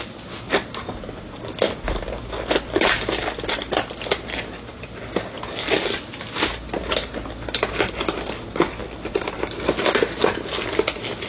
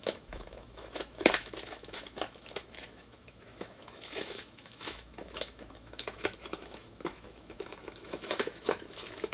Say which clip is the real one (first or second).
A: first